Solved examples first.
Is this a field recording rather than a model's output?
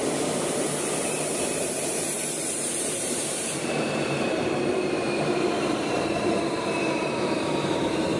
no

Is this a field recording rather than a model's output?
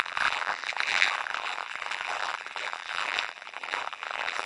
no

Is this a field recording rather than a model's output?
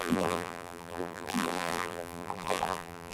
no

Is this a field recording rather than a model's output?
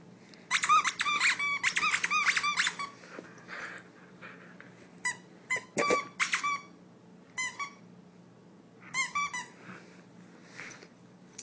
yes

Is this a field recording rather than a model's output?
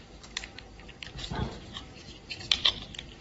no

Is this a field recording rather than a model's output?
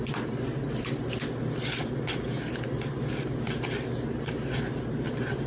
yes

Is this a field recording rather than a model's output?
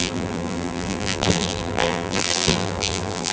no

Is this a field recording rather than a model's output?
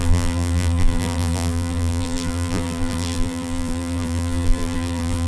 no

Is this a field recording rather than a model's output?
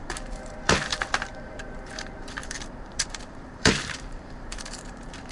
no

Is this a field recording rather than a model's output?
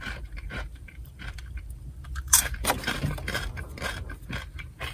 no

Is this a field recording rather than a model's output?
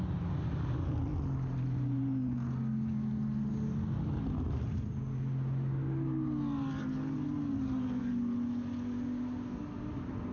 yes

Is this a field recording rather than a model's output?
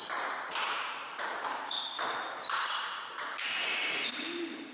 no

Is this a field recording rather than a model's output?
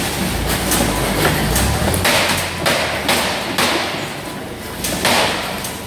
yes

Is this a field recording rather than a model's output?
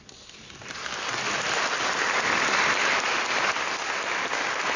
yes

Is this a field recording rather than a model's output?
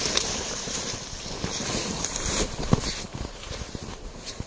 no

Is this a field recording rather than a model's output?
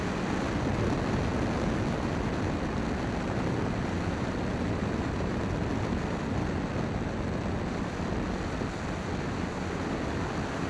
yes